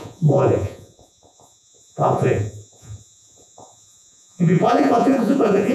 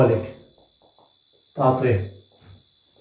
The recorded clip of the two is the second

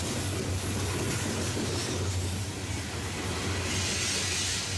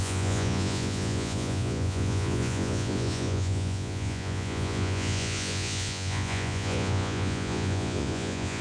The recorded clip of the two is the first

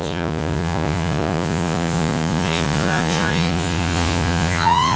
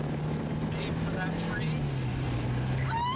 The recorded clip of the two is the second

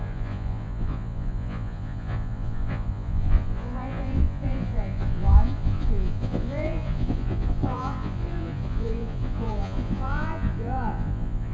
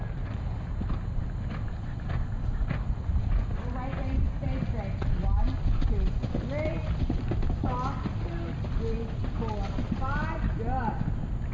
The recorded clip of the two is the second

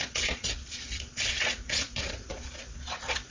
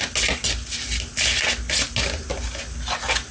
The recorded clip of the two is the second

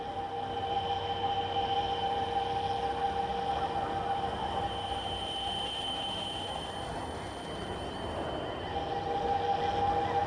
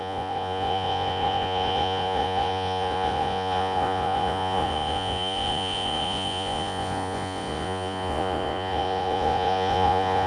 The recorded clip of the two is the first